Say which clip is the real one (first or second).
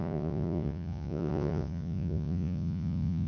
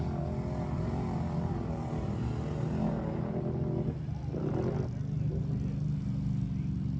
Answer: second